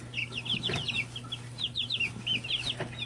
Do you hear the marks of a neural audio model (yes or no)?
no